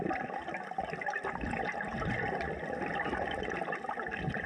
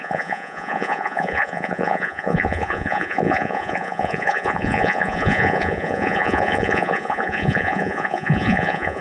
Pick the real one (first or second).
first